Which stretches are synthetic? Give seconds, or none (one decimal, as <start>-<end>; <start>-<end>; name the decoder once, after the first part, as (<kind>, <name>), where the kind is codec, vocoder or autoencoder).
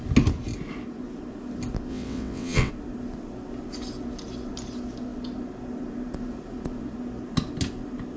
1.9-2.7 (vocoder, WaveNeXt)